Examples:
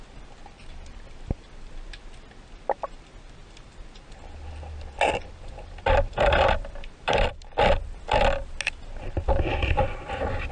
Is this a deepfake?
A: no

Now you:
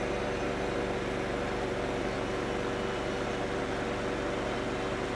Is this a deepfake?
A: no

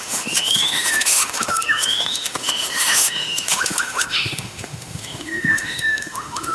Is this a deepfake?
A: yes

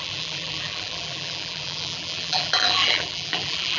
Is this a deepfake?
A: yes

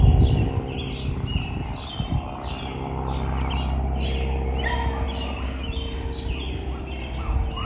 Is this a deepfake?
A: no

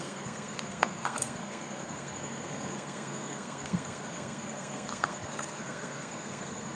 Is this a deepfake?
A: yes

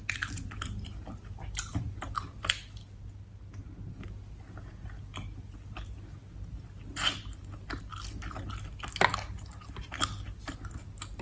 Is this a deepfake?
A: no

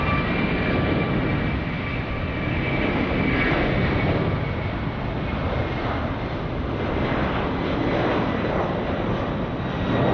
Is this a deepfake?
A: no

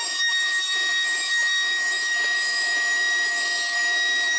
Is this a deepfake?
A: yes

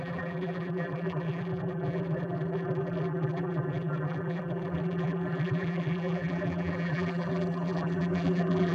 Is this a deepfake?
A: yes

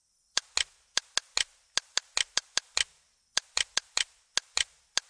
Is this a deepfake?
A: no